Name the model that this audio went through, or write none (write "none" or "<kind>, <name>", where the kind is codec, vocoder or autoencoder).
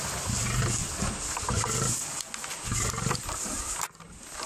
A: none